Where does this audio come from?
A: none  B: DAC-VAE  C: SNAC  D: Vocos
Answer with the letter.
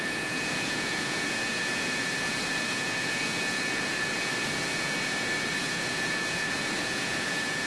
D